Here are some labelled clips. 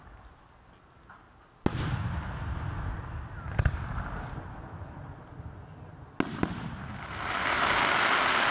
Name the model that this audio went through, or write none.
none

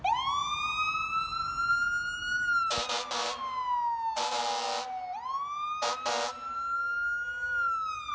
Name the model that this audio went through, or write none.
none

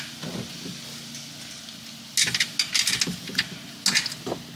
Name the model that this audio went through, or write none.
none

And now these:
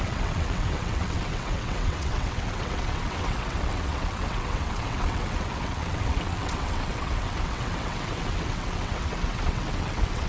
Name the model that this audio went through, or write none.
vocoder, WaveNeXt